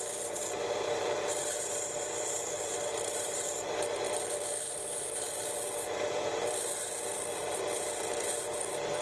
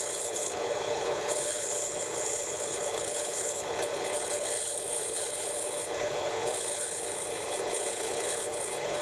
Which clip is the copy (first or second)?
second